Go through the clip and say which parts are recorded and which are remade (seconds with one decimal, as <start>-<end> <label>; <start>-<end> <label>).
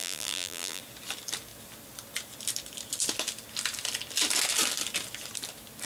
0.0-0.8 remade; 0.8-5.9 recorded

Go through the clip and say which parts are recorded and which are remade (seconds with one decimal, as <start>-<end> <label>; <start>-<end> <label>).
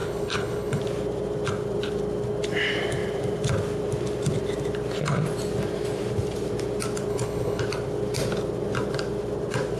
0.0-0.8 remade; 0.8-7.1 recorded; 7.1-7.6 remade; 7.6-9.8 recorded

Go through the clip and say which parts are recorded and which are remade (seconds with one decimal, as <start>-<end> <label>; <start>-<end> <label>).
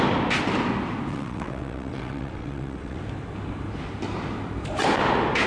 0.0-1.1 recorded; 1.1-3.0 remade; 3.0-5.5 recorded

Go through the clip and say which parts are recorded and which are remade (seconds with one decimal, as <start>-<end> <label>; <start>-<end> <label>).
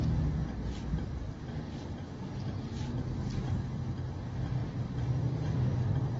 0.0-4.6 recorded; 4.6-5.2 remade; 5.2-6.2 recorded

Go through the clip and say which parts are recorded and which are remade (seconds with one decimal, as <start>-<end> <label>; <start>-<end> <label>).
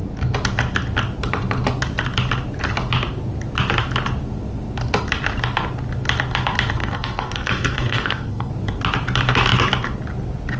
0.0-6.8 recorded; 6.8-8.5 remade; 8.5-10.6 recorded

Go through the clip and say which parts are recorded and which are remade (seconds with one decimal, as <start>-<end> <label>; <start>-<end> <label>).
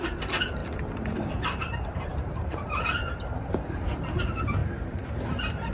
0.0-5.7 remade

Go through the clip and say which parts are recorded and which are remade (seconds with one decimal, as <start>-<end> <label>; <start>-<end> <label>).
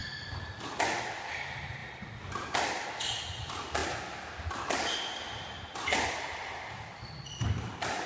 0.0-8.1 recorded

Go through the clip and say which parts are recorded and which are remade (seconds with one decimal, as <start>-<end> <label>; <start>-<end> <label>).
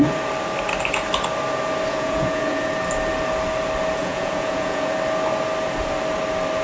0.0-1.9 recorded; 1.9-2.7 remade; 2.7-4.0 recorded; 4.0-4.9 remade; 4.9-6.6 recorded